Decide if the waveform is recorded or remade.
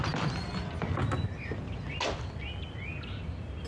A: recorded